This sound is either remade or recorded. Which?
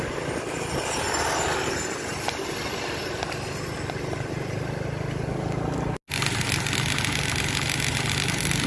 recorded